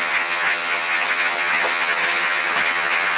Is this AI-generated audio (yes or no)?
yes